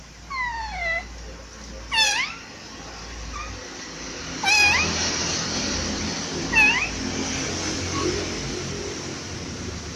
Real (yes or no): yes